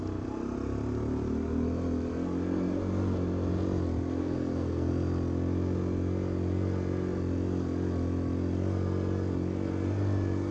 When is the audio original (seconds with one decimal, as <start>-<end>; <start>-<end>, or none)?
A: 0.0-4.2; 4.9-10.5